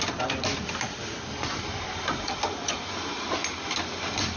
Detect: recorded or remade recorded